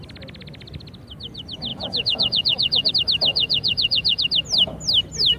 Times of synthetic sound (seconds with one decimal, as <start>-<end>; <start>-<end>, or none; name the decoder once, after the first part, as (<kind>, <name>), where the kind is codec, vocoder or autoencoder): 1.7-2.9 (vocoder, Vocos); 3.3-4.2